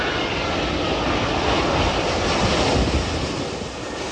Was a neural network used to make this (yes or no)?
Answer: no